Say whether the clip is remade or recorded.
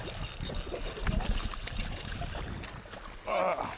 recorded